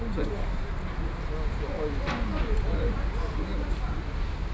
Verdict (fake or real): real